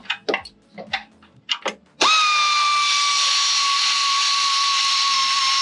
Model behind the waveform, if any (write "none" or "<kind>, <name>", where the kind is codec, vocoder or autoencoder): none